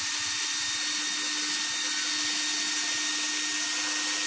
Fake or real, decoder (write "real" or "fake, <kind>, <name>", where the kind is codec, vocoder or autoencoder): real